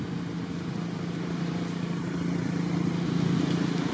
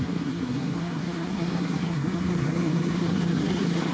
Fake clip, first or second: second